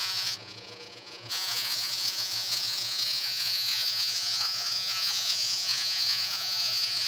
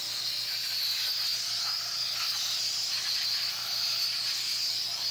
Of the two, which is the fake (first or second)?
first